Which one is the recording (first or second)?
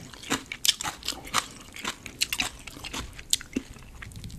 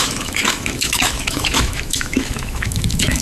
first